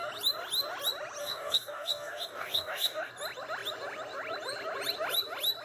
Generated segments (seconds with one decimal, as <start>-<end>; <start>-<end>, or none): 1.2-3.1